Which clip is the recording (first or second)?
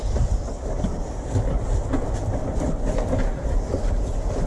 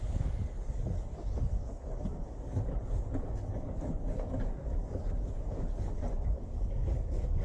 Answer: first